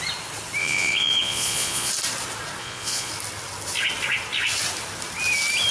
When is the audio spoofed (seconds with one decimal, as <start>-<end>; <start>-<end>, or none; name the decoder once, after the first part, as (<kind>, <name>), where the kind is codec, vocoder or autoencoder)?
0.6-1.9 (vocoder, Vocos); 2.6-3.1